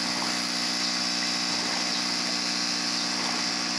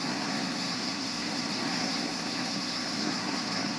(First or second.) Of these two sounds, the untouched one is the first